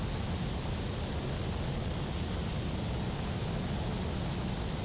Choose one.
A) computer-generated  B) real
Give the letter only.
B